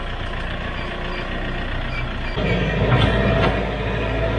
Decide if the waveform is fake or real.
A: real